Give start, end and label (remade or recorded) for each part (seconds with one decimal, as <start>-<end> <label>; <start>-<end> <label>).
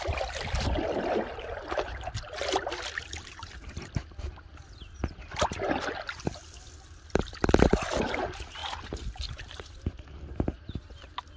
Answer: 0.0-11.4 recorded